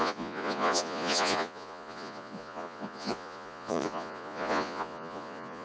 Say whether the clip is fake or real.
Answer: fake